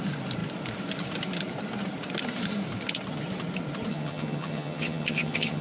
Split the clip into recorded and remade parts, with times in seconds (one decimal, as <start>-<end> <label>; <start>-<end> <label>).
0.0-3.9 recorded; 3.9-5.6 remade